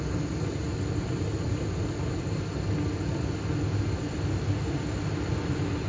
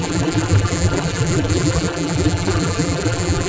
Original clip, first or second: first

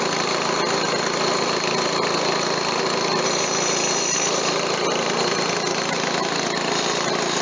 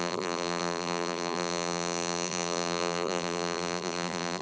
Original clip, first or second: first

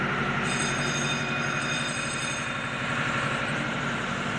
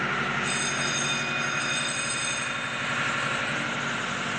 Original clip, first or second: second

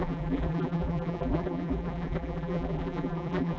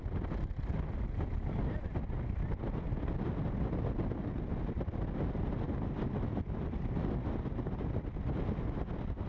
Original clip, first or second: second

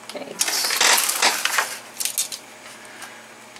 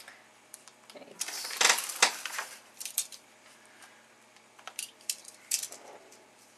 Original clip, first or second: first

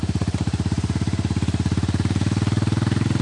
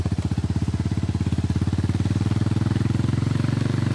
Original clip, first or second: second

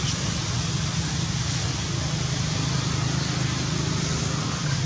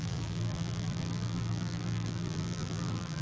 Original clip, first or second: first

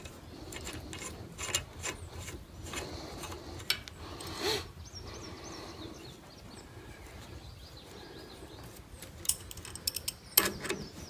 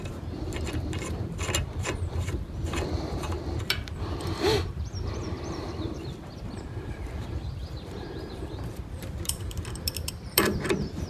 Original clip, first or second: first